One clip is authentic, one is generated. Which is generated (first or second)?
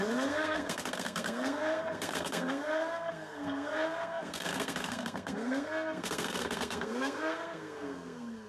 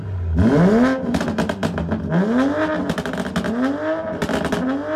first